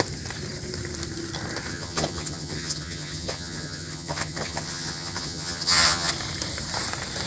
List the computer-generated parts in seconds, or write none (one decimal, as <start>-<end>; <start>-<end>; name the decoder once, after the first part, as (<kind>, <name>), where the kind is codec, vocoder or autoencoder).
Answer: 1.7-6.1 (vocoder, HiFi-GAN)